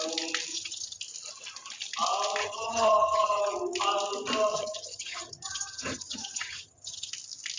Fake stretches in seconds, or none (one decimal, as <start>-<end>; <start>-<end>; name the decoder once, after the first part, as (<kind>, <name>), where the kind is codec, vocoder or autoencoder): 0.5-1.0 (vocoder, HiFi-GAN); 2.4-3.4; 4.5-7.1